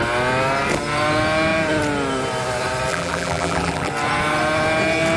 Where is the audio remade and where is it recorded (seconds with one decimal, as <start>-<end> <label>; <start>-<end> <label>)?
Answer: 0.0-2.9 recorded; 2.9-3.9 remade; 3.9-5.2 recorded